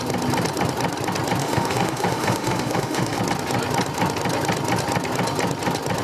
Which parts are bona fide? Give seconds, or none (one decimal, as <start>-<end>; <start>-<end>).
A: 0.0-1.4; 3.2-6.0